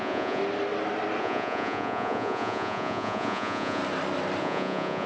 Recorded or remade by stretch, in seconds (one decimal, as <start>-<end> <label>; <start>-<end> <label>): 0.0-0.4 remade; 0.4-1.2 recorded; 1.2-3.8 remade; 3.8-4.4 recorded; 4.4-5.1 remade